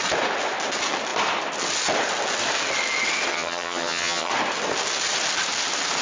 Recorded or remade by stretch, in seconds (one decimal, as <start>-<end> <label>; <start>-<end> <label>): 0.0-3.3 recorded; 3.3-4.3 remade; 4.3-6.0 recorded